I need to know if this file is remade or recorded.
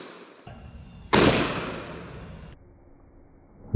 recorded